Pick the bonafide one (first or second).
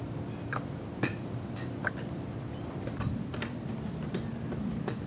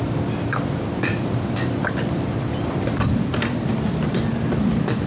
first